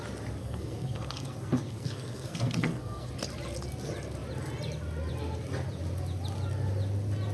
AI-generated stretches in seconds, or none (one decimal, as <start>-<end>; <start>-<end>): 0.4-3.1